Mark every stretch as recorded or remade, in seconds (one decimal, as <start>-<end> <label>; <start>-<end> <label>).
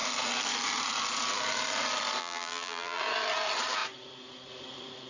0.0-2.2 recorded; 2.2-3.0 remade; 3.0-5.1 recorded